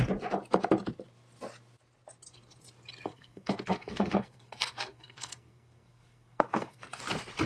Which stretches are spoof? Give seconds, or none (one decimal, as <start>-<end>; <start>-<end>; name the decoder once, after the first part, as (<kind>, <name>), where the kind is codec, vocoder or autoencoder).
3.1-7.0 (codec, SNAC)